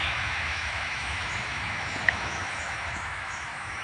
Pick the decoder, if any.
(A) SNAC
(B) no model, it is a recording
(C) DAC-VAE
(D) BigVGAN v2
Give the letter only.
C